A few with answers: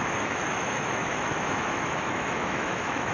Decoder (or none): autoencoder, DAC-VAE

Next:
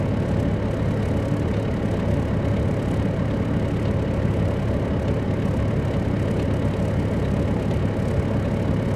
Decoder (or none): none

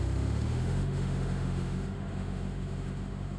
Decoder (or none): autoencoder, DAC-VAE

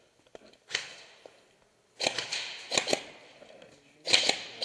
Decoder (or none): none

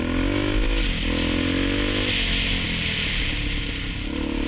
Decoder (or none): none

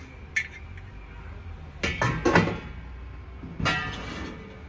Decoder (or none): none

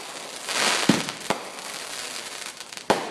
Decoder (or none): none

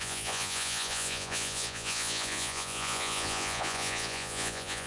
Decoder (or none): vocoder, Vocos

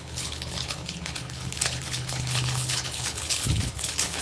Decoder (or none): codec, HILCodec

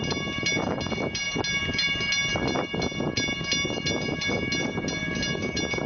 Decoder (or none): none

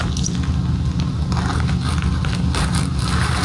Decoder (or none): none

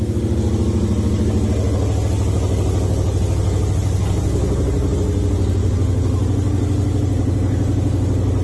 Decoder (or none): none